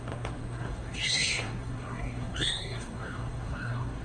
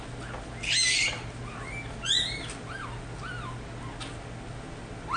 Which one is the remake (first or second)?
first